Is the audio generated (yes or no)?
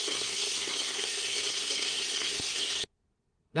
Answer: yes